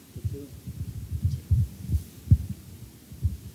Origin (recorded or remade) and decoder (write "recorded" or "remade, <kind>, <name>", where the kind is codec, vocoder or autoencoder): recorded